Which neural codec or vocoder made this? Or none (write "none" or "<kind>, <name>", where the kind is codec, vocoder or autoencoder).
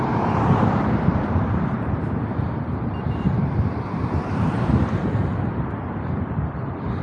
vocoder, BigVGAN v2